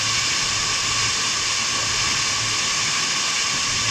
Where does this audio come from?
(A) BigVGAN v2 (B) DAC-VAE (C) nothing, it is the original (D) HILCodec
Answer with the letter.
C